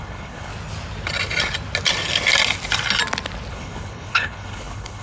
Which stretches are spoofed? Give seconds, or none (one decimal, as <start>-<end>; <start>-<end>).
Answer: 0.0-0.5; 3.5-5.0